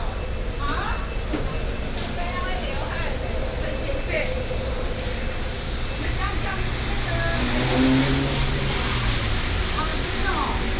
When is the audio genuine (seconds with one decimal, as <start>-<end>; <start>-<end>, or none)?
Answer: 0.0-10.8